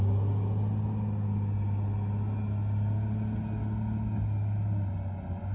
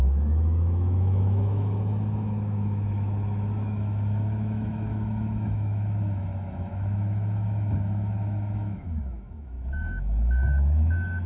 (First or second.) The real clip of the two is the first